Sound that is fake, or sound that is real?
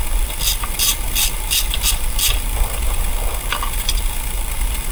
real